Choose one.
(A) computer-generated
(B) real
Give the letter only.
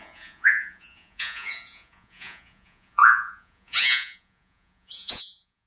A